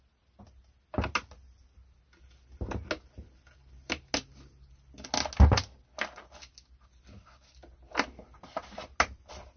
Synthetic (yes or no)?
no